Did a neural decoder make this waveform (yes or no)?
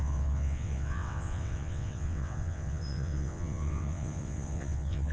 yes